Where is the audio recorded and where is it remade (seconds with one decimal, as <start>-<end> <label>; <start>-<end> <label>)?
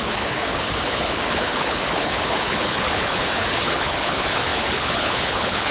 0.0-5.7 remade